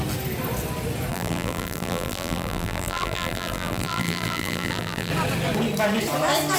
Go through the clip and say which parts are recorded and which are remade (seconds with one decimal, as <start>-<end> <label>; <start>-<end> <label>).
0.0-1.1 recorded; 1.1-5.1 remade; 5.1-6.6 recorded